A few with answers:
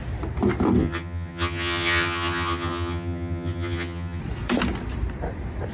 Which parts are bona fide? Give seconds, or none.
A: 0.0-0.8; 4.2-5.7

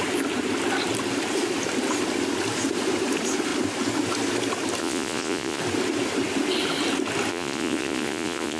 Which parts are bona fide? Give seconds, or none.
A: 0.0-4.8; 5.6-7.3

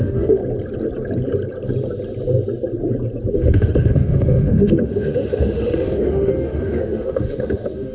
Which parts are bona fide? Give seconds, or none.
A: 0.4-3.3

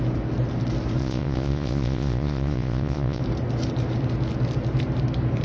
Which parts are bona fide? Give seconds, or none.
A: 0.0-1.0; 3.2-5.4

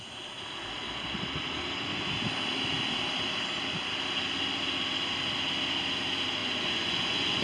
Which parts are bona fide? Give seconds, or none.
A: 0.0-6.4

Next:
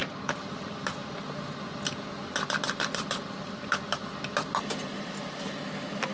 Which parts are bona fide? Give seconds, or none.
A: 1.0-6.1

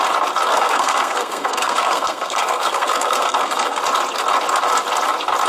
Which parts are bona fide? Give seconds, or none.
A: 0.0-0.5; 3.8-5.5

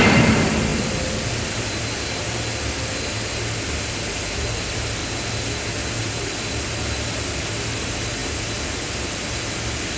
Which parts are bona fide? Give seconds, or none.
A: 0.7-1.3; 5.0-7.6; 8.2-9.4